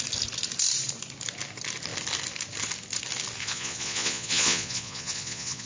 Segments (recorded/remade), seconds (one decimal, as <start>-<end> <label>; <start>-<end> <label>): 0.0-3.4 recorded; 3.4-5.7 remade